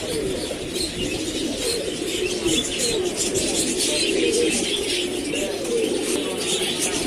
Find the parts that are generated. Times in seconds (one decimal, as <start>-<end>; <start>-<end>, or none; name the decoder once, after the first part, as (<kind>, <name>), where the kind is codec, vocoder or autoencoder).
none